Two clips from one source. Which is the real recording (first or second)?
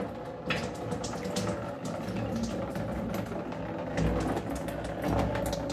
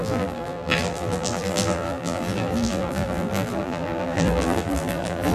first